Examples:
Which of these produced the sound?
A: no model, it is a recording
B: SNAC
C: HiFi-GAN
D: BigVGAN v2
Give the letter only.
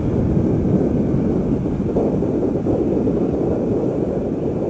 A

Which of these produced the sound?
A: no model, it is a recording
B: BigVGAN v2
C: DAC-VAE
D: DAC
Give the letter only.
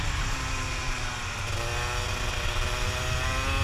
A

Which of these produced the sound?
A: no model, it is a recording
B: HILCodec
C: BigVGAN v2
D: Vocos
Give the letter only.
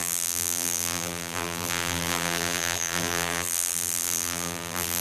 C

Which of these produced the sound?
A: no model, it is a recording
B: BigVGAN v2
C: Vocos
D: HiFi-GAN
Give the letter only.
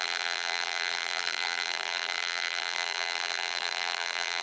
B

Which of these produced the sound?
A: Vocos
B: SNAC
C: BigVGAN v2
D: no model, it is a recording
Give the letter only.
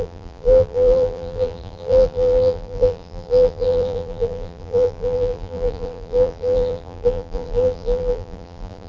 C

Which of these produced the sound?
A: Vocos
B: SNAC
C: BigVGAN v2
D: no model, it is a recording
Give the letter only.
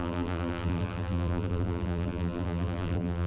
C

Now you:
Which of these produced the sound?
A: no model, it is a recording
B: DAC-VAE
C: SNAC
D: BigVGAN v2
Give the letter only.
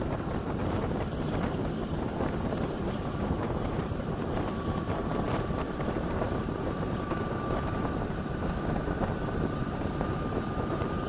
D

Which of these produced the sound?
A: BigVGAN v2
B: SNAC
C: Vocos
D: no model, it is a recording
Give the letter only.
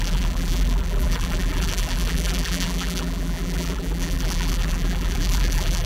A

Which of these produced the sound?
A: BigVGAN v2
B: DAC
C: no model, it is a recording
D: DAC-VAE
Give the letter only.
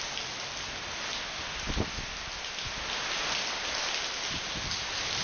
C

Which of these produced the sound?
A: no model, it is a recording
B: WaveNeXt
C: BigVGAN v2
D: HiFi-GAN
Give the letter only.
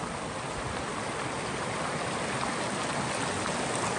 A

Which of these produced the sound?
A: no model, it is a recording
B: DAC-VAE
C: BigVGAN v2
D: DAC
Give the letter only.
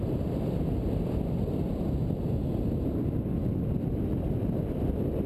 A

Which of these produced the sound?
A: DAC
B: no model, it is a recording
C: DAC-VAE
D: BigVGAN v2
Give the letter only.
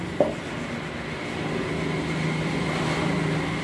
B